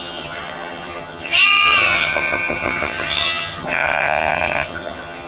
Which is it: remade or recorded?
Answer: remade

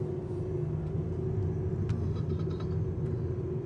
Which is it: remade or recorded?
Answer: recorded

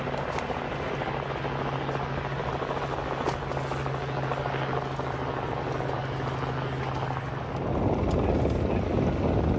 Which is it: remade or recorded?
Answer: recorded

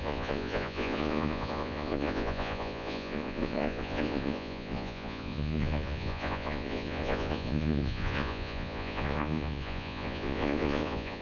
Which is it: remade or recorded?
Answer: remade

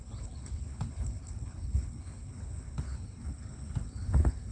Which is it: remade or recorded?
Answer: remade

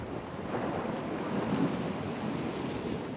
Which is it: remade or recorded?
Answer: recorded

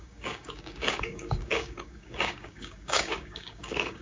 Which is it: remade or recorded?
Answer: remade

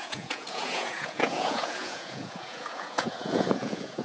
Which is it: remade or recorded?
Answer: remade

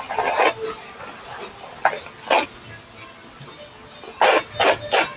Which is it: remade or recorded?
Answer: recorded